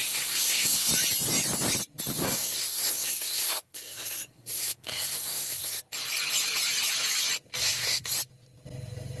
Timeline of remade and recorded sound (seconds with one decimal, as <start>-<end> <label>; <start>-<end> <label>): 0.0-0.9 remade; 0.9-2.2 recorded; 2.2-5.8 remade; 5.8-7.6 recorded; 7.6-8.1 remade; 8.1-9.2 recorded